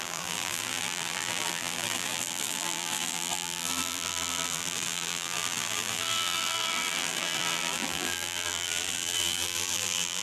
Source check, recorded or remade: remade